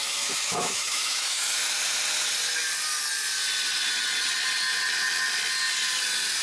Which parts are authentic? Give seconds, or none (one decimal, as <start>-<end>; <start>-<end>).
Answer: 1.4-6.4